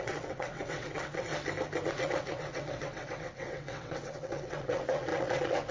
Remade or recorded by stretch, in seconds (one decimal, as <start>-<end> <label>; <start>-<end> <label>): 0.0-1.3 remade; 1.3-1.9 recorded; 1.9-5.7 remade